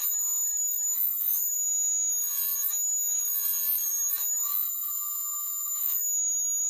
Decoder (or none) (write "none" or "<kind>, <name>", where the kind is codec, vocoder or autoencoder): autoencoder, DAC-VAE